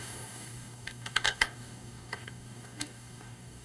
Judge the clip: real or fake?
fake